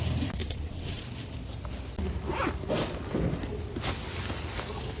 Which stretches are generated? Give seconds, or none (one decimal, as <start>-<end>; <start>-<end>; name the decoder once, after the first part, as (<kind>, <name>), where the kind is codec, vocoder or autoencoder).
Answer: 0.4-1.0 (vocoder, WaveNeXt)